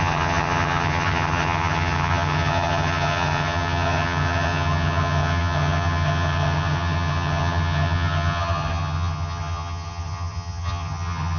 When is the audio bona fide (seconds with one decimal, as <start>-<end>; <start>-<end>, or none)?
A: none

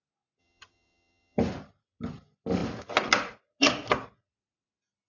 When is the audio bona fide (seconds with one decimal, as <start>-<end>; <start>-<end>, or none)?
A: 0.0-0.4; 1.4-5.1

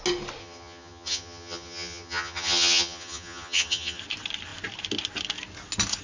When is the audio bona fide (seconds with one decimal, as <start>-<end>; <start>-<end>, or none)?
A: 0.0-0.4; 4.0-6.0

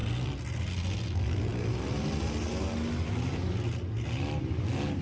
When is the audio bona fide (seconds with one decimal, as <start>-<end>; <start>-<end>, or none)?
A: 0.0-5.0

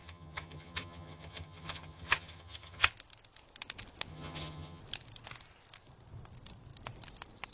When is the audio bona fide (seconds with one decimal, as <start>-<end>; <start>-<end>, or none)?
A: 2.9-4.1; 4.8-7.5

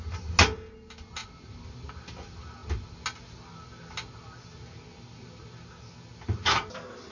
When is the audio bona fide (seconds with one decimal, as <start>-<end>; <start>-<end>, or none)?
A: 0.0-7.1

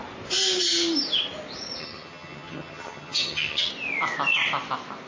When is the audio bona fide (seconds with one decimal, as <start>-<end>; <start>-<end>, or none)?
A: 0.0-1.8; 3.7-5.1